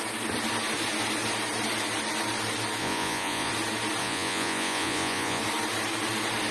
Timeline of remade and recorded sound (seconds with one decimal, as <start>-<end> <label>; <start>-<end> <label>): 0.0-2.8 recorded; 2.8-3.5 remade; 3.5-4.0 recorded; 4.0-5.4 remade; 5.4-6.5 recorded